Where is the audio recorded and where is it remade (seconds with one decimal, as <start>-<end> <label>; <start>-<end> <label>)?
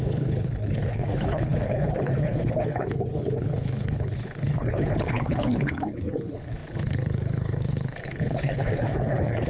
0.0-9.5 remade